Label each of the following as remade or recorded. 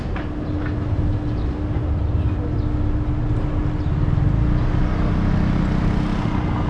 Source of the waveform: recorded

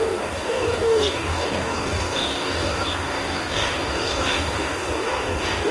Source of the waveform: remade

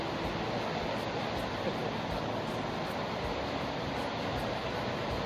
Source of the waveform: recorded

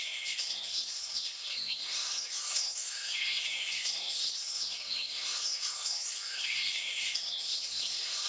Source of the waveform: remade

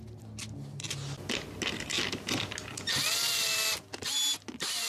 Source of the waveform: recorded